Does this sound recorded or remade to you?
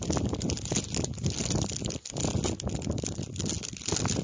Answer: recorded